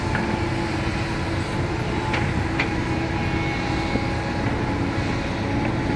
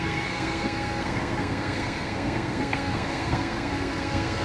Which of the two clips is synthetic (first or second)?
second